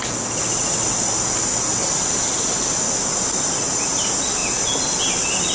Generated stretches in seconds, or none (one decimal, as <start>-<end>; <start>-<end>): none